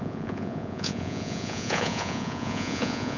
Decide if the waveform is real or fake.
fake